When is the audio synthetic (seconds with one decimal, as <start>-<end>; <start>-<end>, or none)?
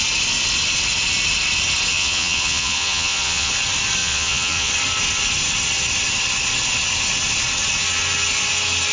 1.9-3.5; 4.0-4.7